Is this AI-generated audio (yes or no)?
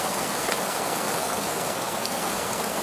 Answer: yes